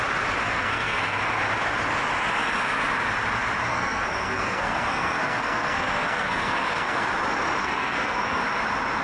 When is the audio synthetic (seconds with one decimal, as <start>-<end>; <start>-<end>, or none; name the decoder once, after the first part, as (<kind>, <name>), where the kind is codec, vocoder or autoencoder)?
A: 0.4-1.2 (codec, SNAC); 3.7-7.1; 7.6-8.4